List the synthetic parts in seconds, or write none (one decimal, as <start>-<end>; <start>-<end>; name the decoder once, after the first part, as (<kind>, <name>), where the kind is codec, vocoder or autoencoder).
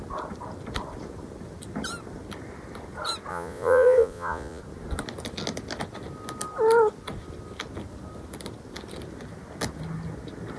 3.3-4.6 (vocoder, Vocos)